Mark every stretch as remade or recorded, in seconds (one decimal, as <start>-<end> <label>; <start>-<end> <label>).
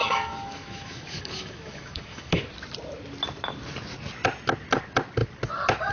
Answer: 0.0-2.4 remade; 2.4-5.9 recorded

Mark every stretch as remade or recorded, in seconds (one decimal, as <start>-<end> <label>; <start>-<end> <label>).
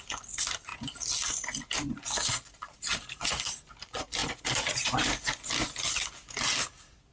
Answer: 0.0-7.1 recorded